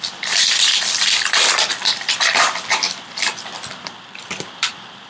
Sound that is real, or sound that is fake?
fake